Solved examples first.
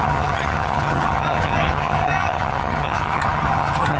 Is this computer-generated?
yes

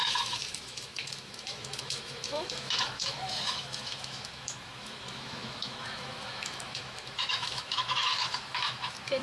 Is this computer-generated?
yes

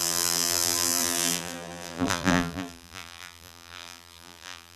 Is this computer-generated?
yes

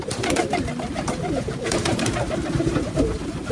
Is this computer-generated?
yes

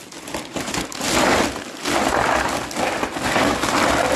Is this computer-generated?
no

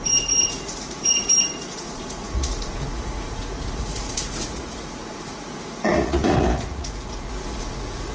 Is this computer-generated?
yes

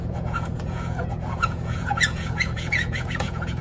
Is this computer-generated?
yes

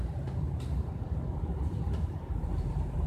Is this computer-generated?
yes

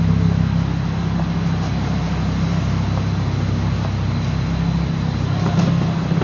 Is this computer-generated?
no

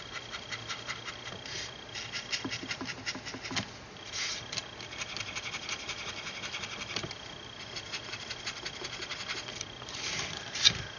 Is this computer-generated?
no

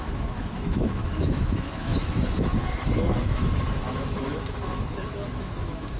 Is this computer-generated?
yes